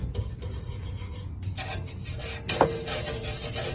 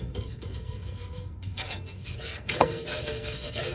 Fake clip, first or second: second